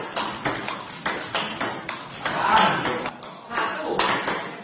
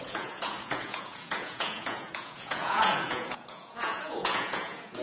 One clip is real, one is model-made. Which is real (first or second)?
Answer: first